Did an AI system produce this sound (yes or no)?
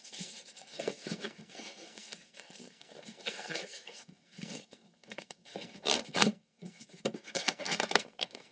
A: yes